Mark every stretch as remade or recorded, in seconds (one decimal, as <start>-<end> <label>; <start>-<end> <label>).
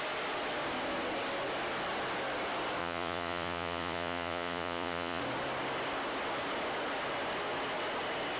0.0-2.8 recorded; 2.8-5.2 remade; 5.2-8.4 recorded